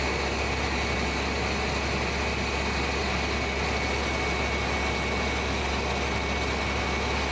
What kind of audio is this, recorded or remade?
recorded